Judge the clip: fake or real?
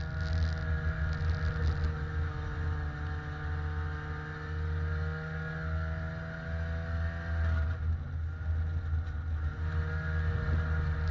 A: real